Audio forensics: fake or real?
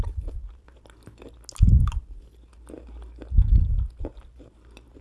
real